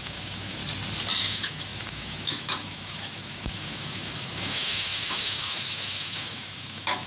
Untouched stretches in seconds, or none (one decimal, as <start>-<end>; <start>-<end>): 0.6-1.2

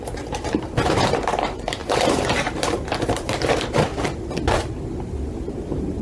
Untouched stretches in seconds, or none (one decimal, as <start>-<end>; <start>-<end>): 3.9-5.3

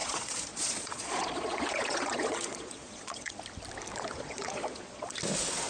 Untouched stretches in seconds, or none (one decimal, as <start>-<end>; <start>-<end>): 3.4-4.1; 5.2-5.7